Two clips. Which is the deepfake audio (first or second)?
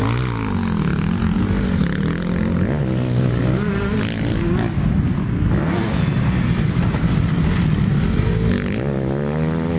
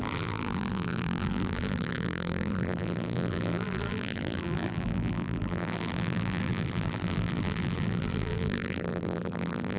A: second